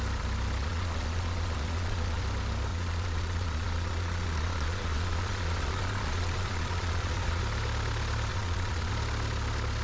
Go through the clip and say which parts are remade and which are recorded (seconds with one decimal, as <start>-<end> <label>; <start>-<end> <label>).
0.0-0.6 recorded; 0.6-2.2 remade; 2.2-2.7 recorded; 2.7-7.4 remade; 7.4-8.3 recorded; 8.3-8.9 remade; 8.9-9.8 recorded